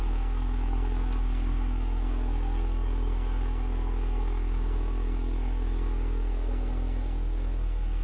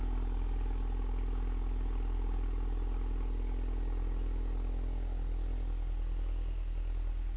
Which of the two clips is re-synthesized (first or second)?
first